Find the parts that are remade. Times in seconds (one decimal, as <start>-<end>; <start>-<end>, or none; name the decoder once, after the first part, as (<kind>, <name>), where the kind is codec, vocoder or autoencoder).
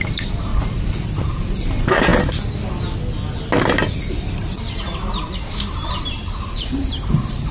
0.0-0.5 (vocoder, BigVGAN v2); 1.3-2.1; 5.9-7.5